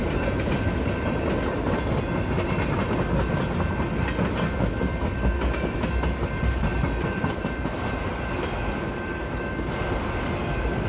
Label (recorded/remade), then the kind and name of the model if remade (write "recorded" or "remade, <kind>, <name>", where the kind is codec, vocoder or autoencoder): recorded